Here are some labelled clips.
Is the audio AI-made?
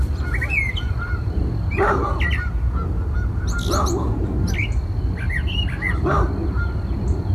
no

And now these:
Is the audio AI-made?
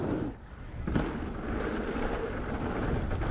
yes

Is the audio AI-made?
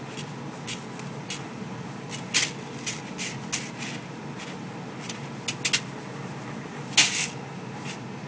no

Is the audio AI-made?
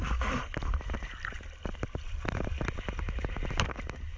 no